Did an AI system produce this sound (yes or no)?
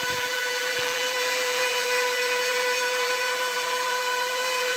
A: yes